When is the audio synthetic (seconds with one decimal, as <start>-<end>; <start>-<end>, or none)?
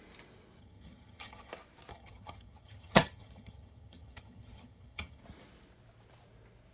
0.6-1.5; 1.9-5.2